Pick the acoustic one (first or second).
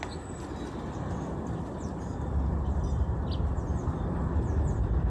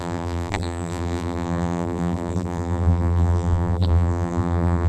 first